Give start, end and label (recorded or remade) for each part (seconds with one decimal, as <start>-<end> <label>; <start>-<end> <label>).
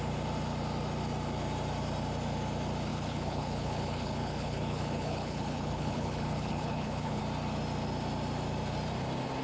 0.0-2.9 recorded; 2.9-7.2 remade; 7.2-9.4 recorded